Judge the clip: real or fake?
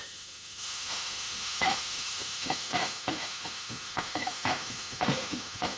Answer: fake